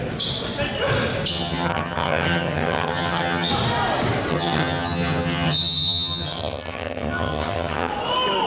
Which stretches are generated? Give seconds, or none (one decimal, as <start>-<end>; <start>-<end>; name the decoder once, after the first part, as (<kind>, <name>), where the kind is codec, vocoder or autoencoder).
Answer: 1.3-3.5 (vocoder, HiFi-GAN); 4.3-7.9